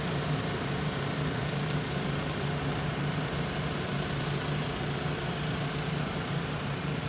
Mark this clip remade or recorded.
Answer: remade